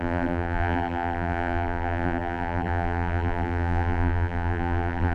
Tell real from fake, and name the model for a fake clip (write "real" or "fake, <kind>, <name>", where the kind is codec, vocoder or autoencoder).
fake, vocoder, BigVGAN v2